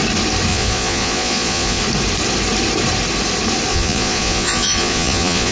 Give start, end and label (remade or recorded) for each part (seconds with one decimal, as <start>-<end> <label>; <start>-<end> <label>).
0.0-0.5 recorded; 0.5-1.8 remade; 1.8-3.7 recorded; 3.7-5.5 remade